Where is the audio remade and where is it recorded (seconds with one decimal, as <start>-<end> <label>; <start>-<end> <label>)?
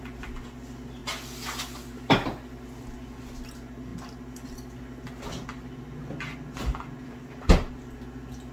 0.0-8.5 recorded